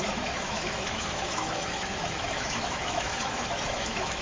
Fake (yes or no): yes